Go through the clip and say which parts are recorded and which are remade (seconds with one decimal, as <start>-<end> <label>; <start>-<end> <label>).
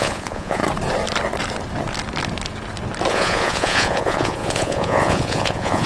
0.0-0.6 remade; 0.6-3.1 recorded; 3.1-5.9 remade